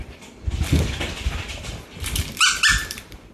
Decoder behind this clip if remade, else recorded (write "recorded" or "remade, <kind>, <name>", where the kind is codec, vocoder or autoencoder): remade, vocoder, BigVGAN v2